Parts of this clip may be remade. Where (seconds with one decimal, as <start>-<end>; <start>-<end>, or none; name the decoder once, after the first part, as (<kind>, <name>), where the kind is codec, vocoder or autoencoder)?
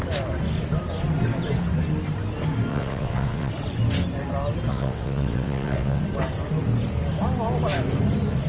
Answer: 2.7-3.5 (vocoder, WaveNeXt); 4.7-6.0